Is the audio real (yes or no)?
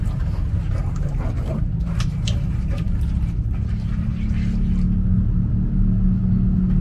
yes